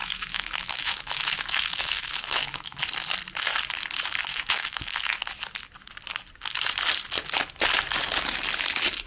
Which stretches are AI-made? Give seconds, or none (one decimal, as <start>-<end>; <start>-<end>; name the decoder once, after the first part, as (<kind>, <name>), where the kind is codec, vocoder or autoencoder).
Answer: 0.0-2.8 (autoencoder, DAC-VAE); 4.3-5.2